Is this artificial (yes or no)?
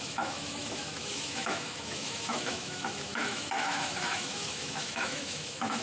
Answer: yes